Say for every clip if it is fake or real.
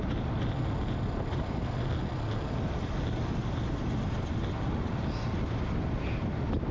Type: real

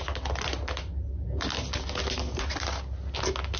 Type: real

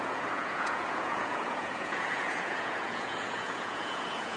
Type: fake